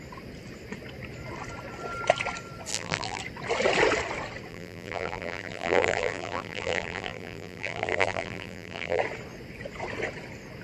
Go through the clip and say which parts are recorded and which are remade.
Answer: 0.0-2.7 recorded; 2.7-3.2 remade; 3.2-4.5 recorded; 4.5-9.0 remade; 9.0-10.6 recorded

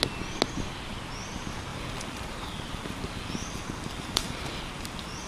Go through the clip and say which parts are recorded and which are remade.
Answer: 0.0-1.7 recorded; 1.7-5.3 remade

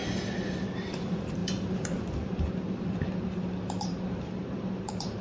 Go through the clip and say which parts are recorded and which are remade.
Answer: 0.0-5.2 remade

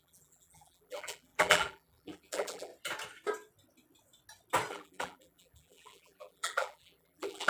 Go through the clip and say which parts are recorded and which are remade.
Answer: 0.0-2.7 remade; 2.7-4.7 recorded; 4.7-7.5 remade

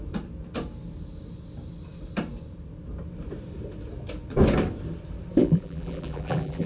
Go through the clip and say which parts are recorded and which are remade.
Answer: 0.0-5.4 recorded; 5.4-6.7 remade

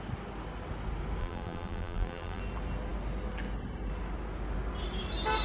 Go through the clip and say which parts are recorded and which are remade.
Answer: 0.0-1.2 recorded; 1.2-2.4 remade; 2.4-5.4 recorded

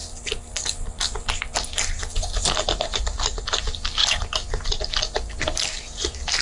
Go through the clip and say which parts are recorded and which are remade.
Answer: 0.0-2.9 recorded; 2.9-3.4 remade; 3.4-6.4 recorded

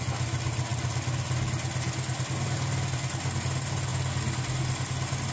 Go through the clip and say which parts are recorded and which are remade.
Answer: 0.0-5.3 recorded